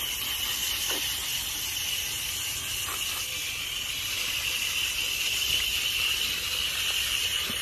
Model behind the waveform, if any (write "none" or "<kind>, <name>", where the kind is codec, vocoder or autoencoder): vocoder, BigVGAN v2